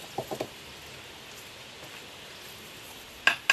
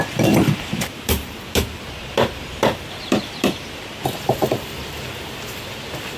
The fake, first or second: second